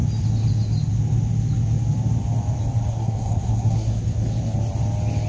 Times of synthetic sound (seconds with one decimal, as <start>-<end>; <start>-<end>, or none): 2.9-4.0